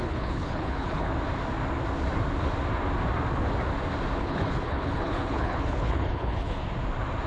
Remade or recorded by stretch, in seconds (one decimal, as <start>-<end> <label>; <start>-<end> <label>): 0.0-1.1 remade; 1.1-4.2 recorded; 4.2-6.6 remade; 6.6-7.3 recorded

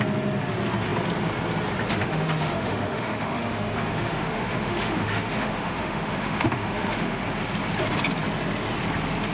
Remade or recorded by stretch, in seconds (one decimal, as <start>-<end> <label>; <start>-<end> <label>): 0.0-1.9 recorded; 1.9-7.2 remade; 7.2-9.3 recorded

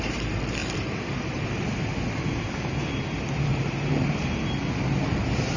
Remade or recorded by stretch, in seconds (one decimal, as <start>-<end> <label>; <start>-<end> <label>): 0.0-0.6 recorded; 0.6-1.8 remade; 1.8-3.5 recorded; 3.5-4.4 remade; 4.4-5.6 recorded

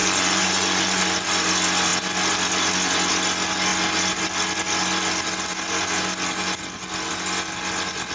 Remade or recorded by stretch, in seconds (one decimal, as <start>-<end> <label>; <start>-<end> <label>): 0.0-1.0 remade; 1.0-8.1 recorded

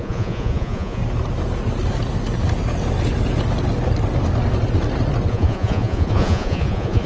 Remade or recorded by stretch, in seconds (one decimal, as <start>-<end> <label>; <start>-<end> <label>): 0.0-1.0 remade; 1.0-5.3 recorded; 5.3-7.1 remade

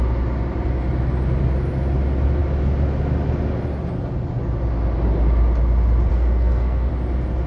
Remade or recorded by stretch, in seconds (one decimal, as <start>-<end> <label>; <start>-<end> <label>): 0.0-6.1 recorded; 6.1-6.9 remade; 6.9-7.5 recorded